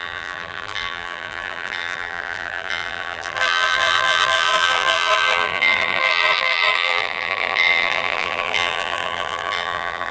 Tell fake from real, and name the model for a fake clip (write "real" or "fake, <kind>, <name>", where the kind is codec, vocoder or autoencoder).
fake, vocoder, BigVGAN v2